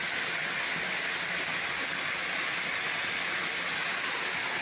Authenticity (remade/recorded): recorded